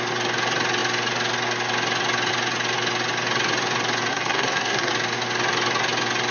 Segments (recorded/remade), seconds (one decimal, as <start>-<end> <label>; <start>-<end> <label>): 0.0-4.1 recorded; 4.1-4.9 remade; 4.9-6.3 recorded